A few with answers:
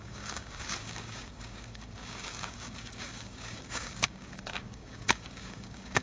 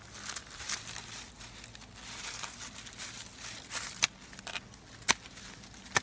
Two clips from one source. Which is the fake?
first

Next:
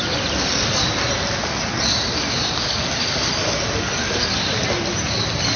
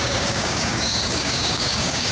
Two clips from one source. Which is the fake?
second